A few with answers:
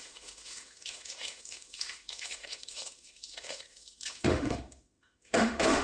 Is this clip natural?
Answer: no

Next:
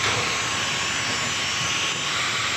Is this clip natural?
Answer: yes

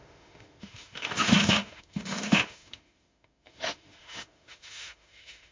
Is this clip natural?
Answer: no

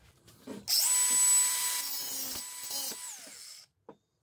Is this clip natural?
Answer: yes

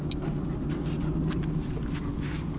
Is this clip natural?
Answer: yes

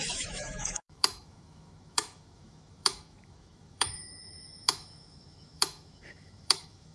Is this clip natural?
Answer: no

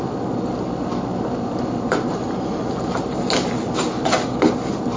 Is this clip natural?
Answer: yes